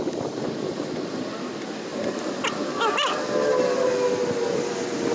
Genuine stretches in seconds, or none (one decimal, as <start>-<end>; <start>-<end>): 0.0-5.1